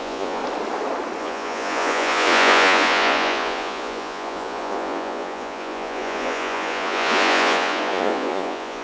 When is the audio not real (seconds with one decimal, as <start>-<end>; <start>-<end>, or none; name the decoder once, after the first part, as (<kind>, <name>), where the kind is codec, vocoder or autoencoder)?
0.0-0.4 (vocoder, Vocos); 1.2-8.8